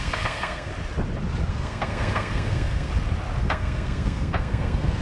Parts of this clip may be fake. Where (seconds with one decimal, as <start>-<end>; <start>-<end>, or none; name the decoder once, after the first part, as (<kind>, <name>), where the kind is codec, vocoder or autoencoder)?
0.0-0.7 (codec, SNAC); 1.5-2.9; 3.4-5.0